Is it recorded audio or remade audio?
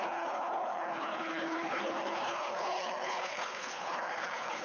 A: remade